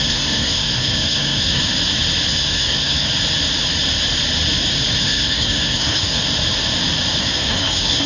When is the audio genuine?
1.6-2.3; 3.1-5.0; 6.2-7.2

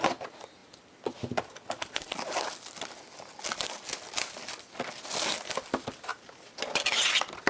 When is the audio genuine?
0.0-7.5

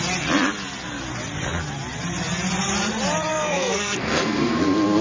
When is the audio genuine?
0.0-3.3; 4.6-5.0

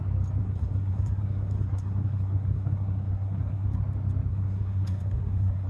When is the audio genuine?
0.0-0.4; 3.8-4.3

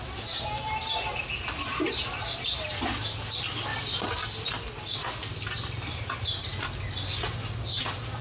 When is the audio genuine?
0.0-8.2

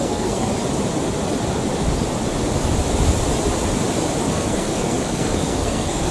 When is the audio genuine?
0.5-4.2

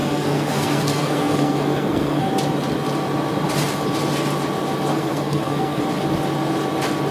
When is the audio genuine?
2.3-4.9; 5.8-7.1

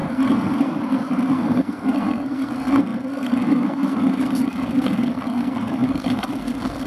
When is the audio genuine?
none